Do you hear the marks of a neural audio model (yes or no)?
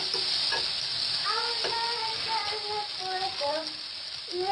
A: no